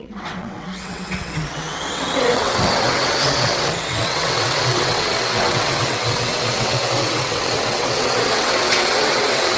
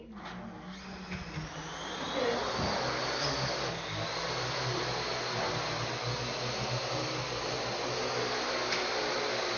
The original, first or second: second